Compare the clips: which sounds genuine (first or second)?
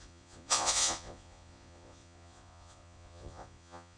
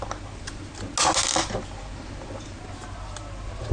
second